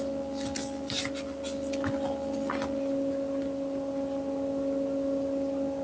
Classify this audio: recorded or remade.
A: recorded